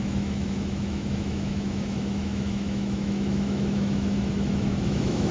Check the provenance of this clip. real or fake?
fake